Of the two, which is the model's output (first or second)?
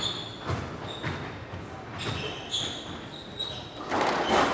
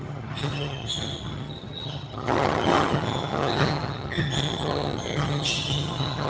second